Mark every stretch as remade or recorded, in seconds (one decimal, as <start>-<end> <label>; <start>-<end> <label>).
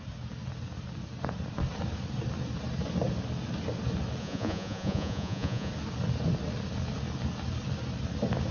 0.0-4.2 recorded; 4.2-5.7 remade; 5.7-8.5 recorded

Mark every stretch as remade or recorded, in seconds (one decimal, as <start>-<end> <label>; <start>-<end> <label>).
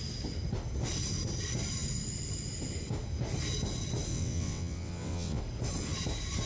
0.0-4.1 recorded; 4.1-5.4 remade; 5.4-6.5 recorded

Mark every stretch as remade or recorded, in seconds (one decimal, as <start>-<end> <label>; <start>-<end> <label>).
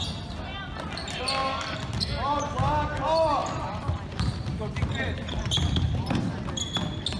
0.0-3.4 recorded; 3.4-5.5 remade; 5.5-7.2 recorded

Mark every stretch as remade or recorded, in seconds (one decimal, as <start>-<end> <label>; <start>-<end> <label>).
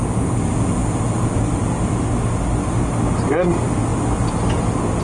0.0-5.0 recorded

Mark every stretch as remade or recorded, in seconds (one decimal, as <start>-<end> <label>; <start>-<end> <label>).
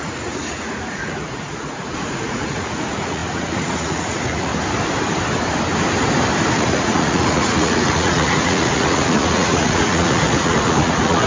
0.0-4.5 remade; 4.5-6.5 recorded; 6.5-11.3 remade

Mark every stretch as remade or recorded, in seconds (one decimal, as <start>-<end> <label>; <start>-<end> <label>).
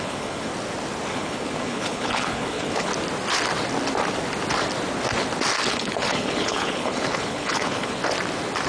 0.0-0.5 remade; 0.5-1.1 recorded; 1.1-2.9 remade; 2.9-5.7 recorded; 5.7-8.0 remade; 8.0-8.7 recorded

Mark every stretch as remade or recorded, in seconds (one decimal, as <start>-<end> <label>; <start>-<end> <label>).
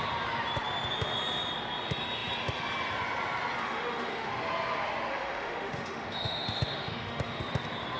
0.0-3.6 recorded; 3.6-4.3 remade; 4.3-5.1 recorded; 5.1-7.4 remade; 7.4-8.0 recorded